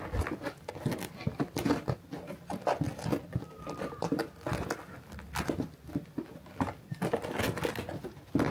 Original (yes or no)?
yes